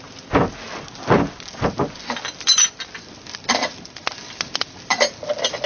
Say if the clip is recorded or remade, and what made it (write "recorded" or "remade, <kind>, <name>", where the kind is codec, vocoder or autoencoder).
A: recorded